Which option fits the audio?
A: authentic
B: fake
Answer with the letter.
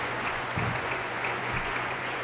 B